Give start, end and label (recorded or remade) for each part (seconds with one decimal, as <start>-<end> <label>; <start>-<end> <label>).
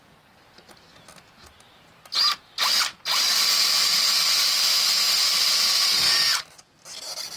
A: 0.0-7.4 recorded